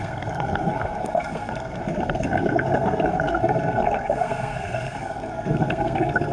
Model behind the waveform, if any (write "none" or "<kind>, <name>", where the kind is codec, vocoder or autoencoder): codec, SNAC